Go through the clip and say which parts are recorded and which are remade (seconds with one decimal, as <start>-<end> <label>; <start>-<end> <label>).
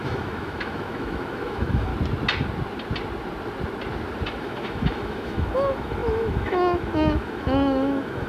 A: 0.0-1.9 remade; 1.9-4.4 recorded; 4.4-8.3 remade